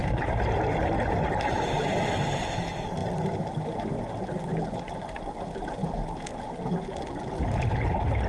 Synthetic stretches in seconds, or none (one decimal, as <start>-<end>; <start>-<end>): none